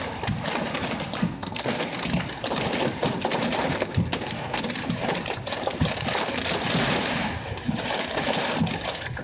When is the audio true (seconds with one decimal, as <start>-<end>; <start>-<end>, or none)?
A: 0.0-1.2; 2.0-3.7; 4.6-9.2